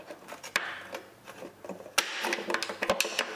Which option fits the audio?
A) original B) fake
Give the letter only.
A